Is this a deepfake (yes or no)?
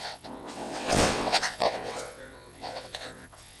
yes